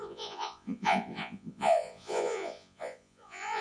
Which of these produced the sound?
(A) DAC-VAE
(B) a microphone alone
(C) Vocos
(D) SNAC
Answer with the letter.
C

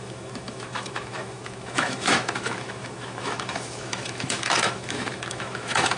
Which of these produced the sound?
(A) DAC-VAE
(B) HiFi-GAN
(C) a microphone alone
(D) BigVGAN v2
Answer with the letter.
A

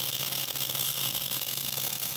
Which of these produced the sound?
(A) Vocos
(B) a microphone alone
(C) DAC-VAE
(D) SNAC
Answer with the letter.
D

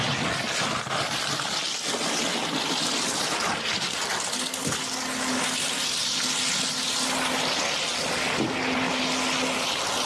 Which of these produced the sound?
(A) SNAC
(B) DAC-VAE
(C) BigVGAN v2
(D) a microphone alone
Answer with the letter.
D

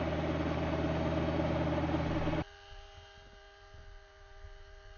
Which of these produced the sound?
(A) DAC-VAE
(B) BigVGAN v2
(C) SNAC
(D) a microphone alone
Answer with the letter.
D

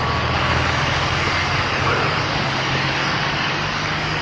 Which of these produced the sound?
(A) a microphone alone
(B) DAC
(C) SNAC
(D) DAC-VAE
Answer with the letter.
B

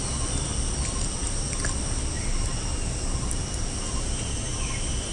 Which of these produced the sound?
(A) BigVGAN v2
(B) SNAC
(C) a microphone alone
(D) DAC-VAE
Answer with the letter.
C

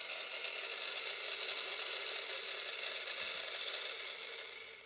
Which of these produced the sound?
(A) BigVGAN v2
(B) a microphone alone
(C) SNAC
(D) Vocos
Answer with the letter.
B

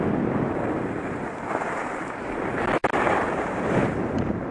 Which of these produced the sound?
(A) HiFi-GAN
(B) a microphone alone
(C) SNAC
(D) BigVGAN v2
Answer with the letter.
B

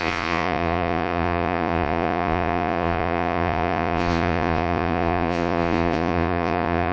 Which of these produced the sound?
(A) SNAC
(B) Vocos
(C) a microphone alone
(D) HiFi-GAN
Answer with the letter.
B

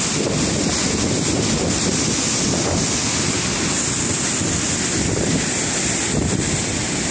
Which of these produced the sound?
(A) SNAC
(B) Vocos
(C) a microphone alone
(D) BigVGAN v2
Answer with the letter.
C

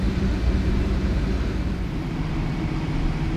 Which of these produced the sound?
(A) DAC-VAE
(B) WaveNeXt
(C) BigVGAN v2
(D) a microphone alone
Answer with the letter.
C